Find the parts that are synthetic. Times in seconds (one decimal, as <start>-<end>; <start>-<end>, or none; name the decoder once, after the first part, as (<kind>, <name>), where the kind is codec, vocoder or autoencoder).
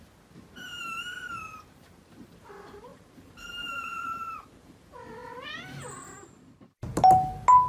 2.9-4.8 (vocoder, BigVGAN v2)